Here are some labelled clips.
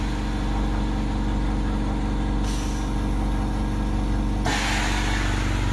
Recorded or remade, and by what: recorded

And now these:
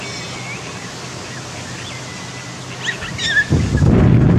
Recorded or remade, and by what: recorded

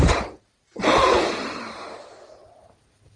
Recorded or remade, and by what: remade, vocoder, BigVGAN v2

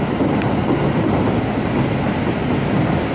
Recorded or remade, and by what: remade, vocoder, BigVGAN v2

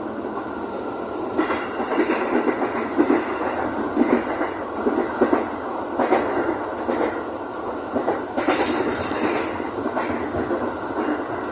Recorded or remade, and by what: recorded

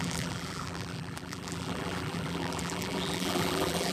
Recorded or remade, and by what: remade, vocoder, BigVGAN v2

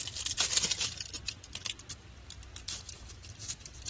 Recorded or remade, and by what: remade, vocoder, BigVGAN v2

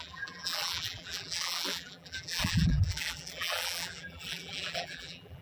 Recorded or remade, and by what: remade, vocoder, BigVGAN v2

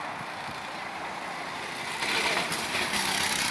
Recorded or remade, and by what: recorded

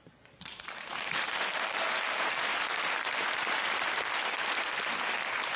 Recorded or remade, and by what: remade, vocoder, BigVGAN v2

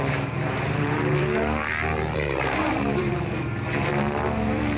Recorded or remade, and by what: remade, vocoder, BigVGAN v2